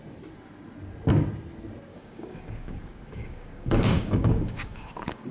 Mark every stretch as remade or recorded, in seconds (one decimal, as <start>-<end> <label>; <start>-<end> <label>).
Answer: 0.0-1.9 recorded; 1.9-5.3 remade